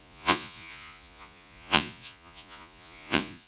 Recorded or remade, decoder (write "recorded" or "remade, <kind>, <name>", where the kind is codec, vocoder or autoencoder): remade, vocoder, Vocos